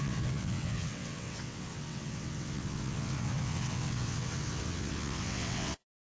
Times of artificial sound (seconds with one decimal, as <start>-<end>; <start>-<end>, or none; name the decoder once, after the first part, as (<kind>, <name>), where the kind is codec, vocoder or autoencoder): 0.0-6.1 (vocoder, WaveNeXt)